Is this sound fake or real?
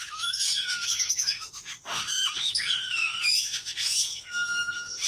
fake